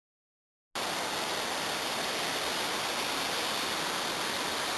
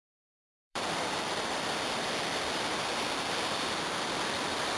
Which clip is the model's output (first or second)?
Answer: second